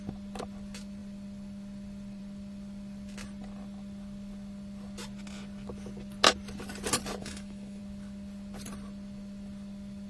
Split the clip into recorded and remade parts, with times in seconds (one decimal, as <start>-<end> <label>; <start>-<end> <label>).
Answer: 0.0-7.2 recorded; 7.2-7.8 remade; 7.8-10.1 recorded